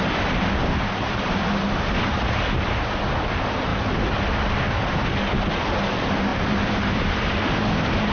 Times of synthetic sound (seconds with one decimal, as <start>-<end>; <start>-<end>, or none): 3.7-4.2; 6.3-7.4